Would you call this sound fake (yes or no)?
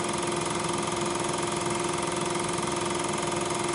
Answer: no